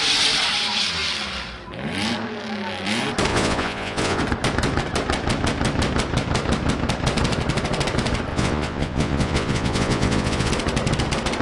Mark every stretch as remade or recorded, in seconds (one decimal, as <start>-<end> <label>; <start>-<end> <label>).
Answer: 0.0-3.3 recorded; 3.3-4.2 remade; 4.2-8.3 recorded; 8.3-10.5 remade; 10.5-11.4 recorded